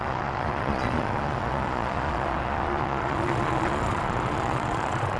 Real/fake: fake